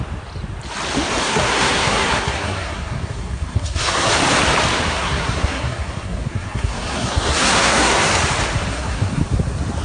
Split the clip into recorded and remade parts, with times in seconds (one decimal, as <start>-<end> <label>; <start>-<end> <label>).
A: 0.0-1.2 recorded; 1.2-4.1 remade; 4.1-4.9 recorded; 4.9-8.1 remade; 8.1-8.7 recorded; 8.7-9.2 remade; 9.2-9.8 recorded